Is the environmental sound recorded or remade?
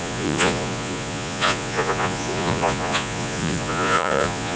remade